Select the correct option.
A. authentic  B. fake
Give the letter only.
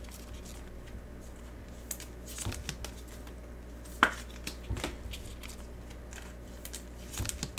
A